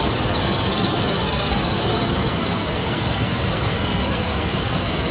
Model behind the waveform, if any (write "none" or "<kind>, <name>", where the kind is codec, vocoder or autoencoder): codec, SNAC